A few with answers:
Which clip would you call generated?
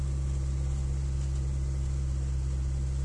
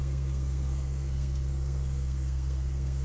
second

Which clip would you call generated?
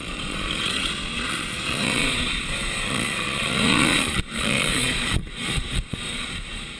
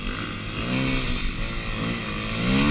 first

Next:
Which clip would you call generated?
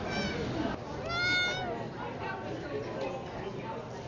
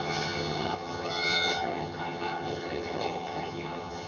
second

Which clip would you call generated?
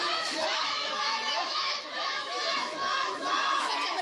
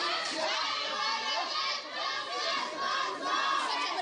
first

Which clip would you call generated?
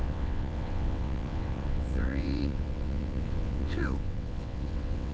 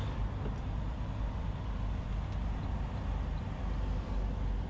first